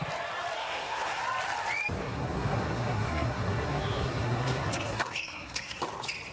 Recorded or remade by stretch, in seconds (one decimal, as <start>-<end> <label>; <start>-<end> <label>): 0.0-0.6 recorded; 0.6-1.2 remade; 1.2-2.0 recorded; 2.0-5.8 remade; 5.8-6.3 recorded